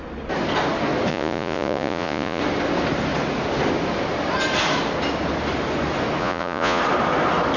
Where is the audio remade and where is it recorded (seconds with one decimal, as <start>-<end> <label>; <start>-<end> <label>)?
0.0-1.1 recorded; 1.1-2.4 remade; 2.4-6.2 recorded; 6.2-6.8 remade; 6.8-7.6 recorded